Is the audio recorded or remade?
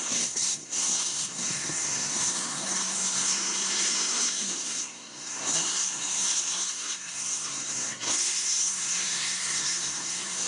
remade